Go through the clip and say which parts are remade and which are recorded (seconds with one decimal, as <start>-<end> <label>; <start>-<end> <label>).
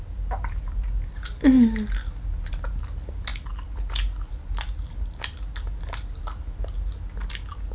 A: 0.0-7.7 recorded